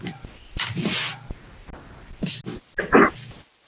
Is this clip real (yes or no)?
yes